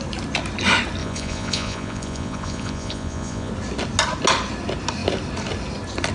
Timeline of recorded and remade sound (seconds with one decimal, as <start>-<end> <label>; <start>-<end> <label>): 0.0-1.0 recorded; 1.0-3.5 remade; 3.5-6.1 recorded